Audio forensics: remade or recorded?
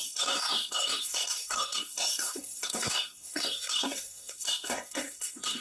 remade